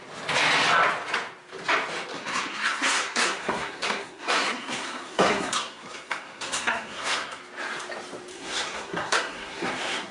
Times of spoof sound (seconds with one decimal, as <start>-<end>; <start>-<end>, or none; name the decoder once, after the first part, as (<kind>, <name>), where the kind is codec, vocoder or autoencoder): 2.1-7.4 (codec, SNAC); 8.3-10.1